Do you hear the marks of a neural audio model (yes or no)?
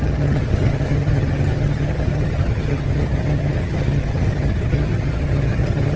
yes